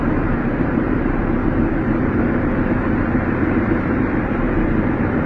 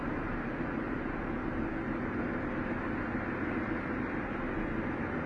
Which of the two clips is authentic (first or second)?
second